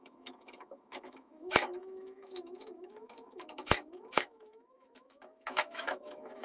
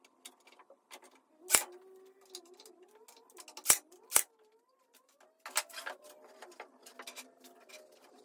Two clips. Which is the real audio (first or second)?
second